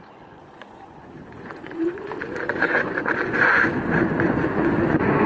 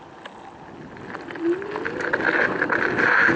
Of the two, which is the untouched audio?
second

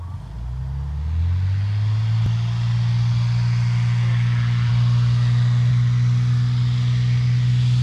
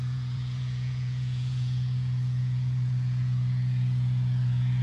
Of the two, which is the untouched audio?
first